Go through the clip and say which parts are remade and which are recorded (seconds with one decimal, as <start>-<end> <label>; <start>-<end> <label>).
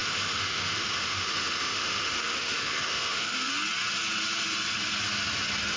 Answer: 0.0-3.5 remade; 3.5-5.8 recorded